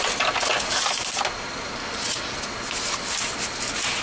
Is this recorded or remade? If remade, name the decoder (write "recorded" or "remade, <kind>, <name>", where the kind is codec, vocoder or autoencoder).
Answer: recorded